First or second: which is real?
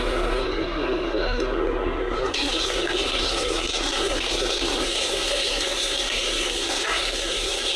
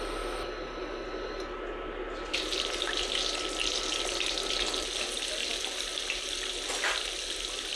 second